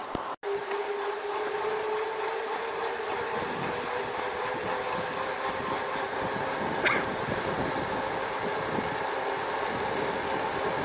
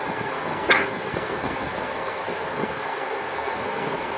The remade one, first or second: second